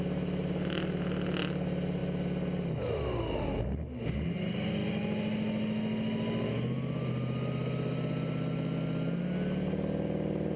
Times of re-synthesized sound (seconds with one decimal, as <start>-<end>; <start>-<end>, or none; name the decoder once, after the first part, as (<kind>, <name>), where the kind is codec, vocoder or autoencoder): none